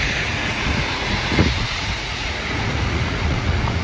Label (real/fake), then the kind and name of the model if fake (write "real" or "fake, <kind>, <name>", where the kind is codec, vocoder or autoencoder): fake, vocoder, Vocos